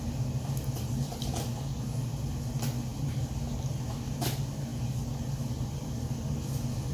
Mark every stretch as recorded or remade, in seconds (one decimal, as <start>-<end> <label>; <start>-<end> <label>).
0.0-6.9 recorded